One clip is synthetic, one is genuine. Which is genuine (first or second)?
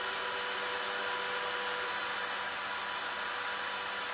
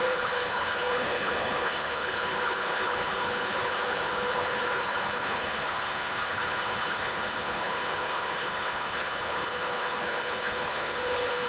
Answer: first